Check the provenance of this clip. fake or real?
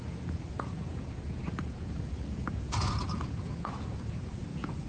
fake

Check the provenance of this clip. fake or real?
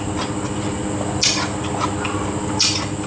real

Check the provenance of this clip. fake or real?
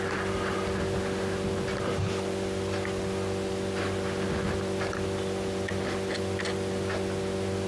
real